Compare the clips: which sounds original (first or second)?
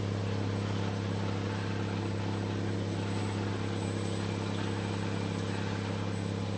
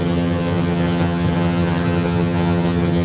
first